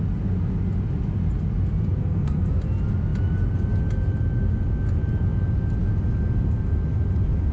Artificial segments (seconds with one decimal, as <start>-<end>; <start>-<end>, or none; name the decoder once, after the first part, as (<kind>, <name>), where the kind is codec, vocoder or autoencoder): 2.0-2.5 (codec, SNAC)